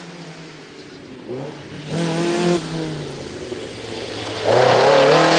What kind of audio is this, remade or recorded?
recorded